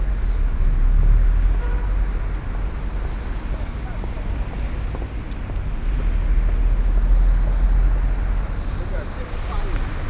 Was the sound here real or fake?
real